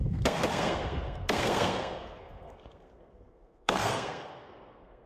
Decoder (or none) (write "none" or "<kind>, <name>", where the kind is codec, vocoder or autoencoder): codec, SNAC